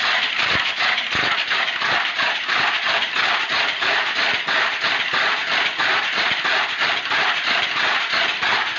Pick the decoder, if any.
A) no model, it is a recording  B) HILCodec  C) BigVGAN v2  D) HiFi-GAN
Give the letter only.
A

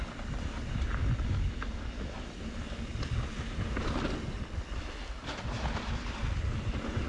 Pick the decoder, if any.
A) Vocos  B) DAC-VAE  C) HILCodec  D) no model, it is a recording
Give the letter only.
D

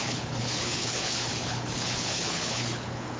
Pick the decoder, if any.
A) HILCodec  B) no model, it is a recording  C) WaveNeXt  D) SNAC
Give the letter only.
A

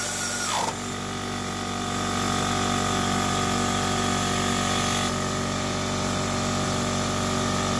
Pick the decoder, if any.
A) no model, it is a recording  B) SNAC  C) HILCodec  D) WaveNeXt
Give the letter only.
A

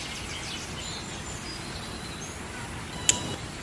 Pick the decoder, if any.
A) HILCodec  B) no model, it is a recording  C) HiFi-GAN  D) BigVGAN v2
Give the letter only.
B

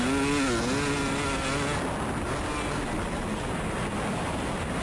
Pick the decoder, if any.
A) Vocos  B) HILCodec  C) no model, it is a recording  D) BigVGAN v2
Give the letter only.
C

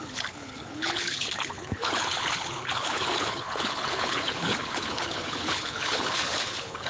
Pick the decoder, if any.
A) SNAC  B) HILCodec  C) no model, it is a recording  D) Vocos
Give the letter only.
B